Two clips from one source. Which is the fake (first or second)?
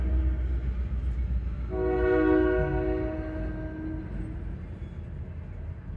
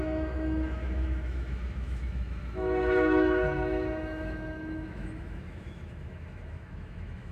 second